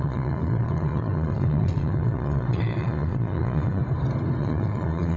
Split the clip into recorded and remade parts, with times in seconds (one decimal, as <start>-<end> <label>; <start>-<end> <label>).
0.0-3.8 remade; 3.8-4.4 recorded; 4.4-5.2 remade